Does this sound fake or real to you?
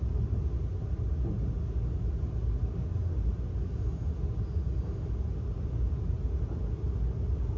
real